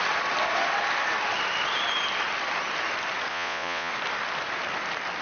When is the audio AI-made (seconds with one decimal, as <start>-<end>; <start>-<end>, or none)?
3.3-3.9